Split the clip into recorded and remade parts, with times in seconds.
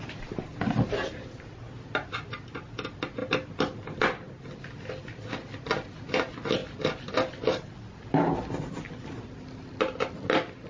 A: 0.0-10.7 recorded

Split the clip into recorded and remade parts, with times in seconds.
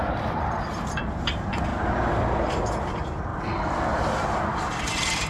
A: 0.0-1.7 remade; 1.7-2.3 recorded; 2.3-3.3 remade; 3.3-4.5 recorded; 4.5-5.3 remade